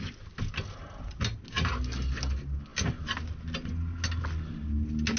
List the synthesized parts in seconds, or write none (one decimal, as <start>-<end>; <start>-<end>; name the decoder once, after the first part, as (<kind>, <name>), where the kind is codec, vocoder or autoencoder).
none